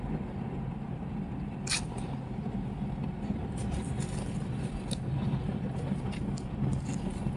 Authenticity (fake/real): real